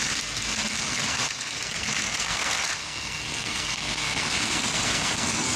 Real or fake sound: fake